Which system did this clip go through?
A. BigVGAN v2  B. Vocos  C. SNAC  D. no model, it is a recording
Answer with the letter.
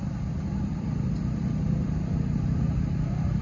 D